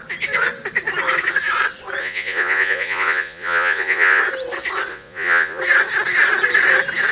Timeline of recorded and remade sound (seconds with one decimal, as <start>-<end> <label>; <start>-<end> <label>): 0.0-2.0 recorded; 2.0-4.2 remade; 4.2-4.9 recorded; 4.9-5.6 remade; 5.6-7.1 recorded